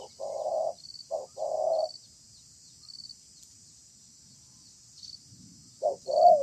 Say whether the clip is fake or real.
real